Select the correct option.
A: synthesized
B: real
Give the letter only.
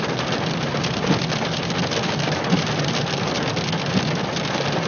B